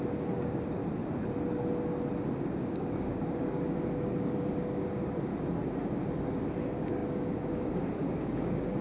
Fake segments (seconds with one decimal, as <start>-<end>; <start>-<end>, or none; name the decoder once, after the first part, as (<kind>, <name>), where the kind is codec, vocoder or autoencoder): 0.0-0.8 (codec, DAC); 2.6-5.3; 6.4-8.8